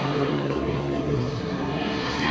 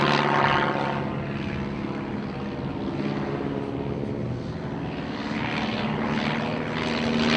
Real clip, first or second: second